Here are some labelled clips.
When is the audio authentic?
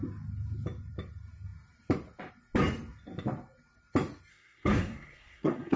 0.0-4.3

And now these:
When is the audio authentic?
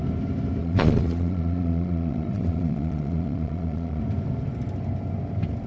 0.0-0.6; 4.0-5.7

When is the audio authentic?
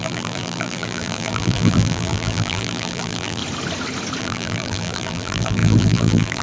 3.4-4.2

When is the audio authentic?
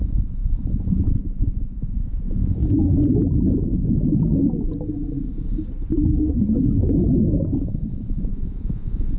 2.6-7.5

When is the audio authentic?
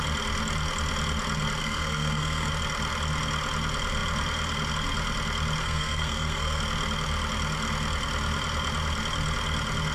0.0-1.6; 2.5-5.6; 6.6-9.9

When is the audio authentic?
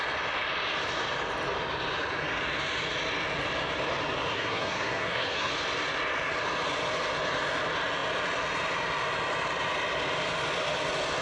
0.0-4.3; 5.5-11.2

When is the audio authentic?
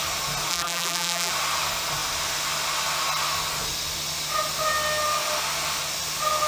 0.0-0.5; 1.3-6.5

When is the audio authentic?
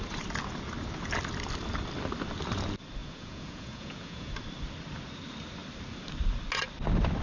0.0-3.0; 4.3-7.2